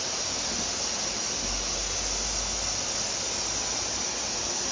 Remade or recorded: recorded